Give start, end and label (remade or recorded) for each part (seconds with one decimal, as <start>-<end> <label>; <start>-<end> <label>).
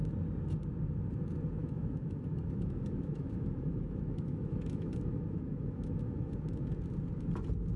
0.0-1.6 recorded; 1.6-6.3 remade; 6.3-7.8 recorded